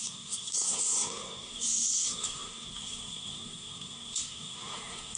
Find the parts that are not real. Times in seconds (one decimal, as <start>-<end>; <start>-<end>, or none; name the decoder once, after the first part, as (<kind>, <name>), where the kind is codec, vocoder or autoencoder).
0.0-5.2 (codec, SNAC)